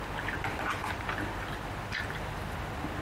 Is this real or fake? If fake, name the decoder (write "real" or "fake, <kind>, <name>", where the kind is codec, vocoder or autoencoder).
real